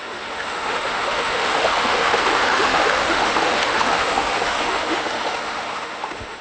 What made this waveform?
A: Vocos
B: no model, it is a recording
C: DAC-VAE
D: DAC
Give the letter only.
C